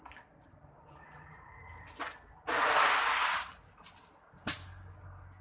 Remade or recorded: recorded